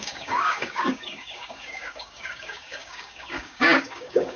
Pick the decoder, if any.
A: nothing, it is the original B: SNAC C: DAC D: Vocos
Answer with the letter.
C